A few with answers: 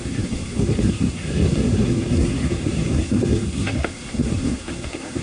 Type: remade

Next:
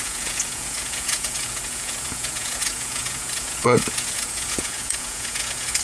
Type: remade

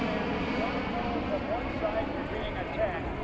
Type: recorded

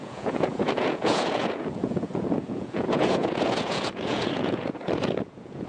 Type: remade